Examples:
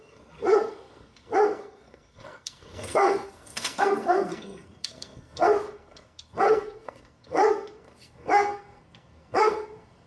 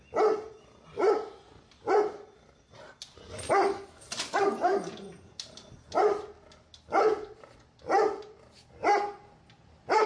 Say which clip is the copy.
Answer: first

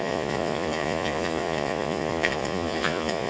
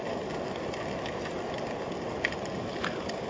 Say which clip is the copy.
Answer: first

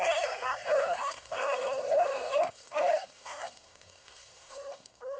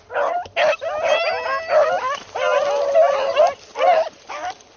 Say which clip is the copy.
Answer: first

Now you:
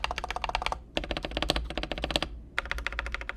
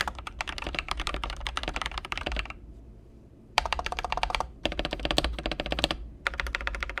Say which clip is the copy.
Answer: second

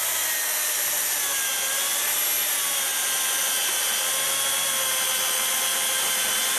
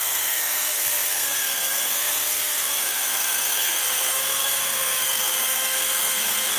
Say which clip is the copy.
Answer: second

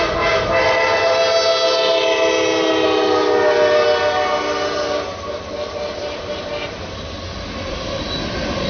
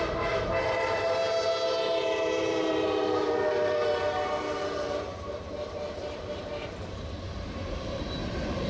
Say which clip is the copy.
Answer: second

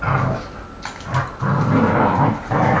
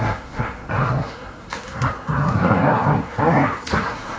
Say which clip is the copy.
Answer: second